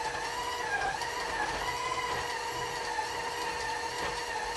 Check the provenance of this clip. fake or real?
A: real